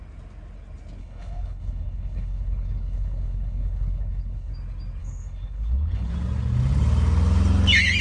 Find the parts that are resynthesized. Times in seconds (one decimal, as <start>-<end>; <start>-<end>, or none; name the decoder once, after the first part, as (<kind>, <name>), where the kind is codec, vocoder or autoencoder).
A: 1.0-4.5 (codec, HILCodec); 5.0-6.1

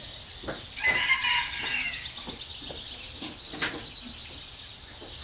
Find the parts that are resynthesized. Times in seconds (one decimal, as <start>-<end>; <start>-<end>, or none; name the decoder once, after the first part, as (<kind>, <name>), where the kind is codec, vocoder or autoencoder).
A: none

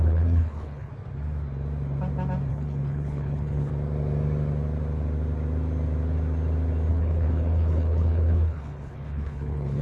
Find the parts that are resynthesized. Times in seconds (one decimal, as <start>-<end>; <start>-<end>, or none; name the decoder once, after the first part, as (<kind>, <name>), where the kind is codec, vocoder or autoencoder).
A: 0.0-0.9 (codec, HILCodec); 2.5-3.7; 6.9-9.8

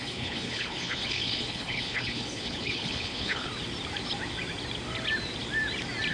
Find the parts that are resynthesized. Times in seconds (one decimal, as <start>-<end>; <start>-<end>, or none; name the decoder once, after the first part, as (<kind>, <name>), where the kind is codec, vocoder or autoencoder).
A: 0.0-3.5 (codec, HILCodec)

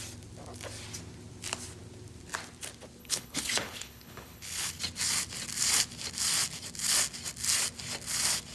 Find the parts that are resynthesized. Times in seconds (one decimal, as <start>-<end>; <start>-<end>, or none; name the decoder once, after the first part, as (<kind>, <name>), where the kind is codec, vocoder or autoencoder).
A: 3.0-4.8 (codec, HILCodec)

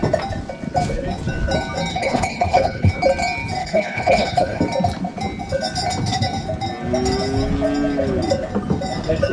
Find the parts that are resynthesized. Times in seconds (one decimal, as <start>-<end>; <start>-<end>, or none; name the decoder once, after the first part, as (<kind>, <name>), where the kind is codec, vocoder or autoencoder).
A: 1.9-2.9 (codec, HILCodec); 3.6-4.6